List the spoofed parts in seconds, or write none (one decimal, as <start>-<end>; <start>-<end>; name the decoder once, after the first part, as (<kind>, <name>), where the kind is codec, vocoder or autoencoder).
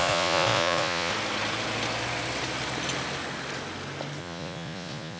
0.0-1.1 (vocoder, Vocos); 4.2-5.2